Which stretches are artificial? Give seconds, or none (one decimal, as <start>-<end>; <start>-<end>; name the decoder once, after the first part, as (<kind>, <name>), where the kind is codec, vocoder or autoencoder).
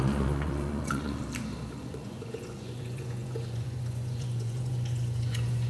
0.0-1.2 (vocoder, Vocos); 1.8-5.7